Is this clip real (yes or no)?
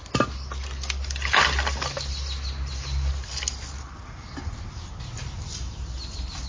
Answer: yes